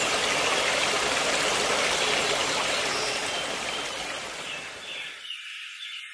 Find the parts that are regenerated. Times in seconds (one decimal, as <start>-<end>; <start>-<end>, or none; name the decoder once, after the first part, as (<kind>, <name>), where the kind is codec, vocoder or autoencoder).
none